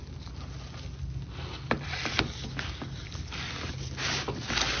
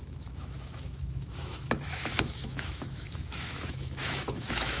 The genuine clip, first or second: first